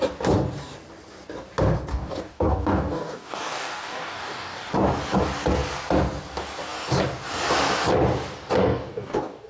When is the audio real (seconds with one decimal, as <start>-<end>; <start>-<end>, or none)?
0.0-1.9; 4.7-8.6